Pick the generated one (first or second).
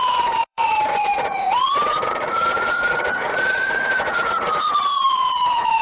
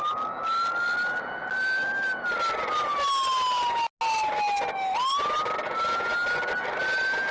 first